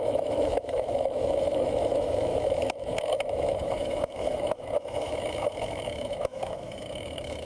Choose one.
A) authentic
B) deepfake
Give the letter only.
B